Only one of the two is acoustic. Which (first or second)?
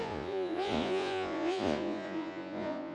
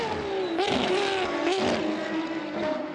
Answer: second